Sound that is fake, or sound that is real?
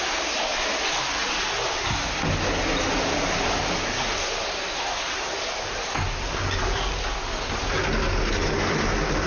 real